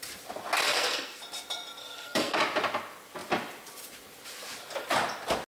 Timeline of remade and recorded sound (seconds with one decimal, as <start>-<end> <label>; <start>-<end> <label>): 0.0-0.6 recorded; 0.6-1.2 remade; 1.2-1.8 recorded; 1.8-2.4 remade; 2.4-5.5 recorded